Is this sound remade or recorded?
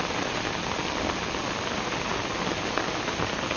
recorded